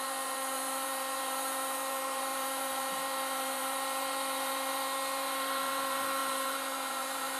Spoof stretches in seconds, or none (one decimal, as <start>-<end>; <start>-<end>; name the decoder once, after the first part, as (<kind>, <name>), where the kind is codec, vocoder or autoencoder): 0.0-7.4 (vocoder, BigVGAN v2)